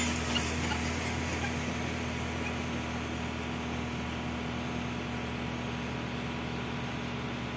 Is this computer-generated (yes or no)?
no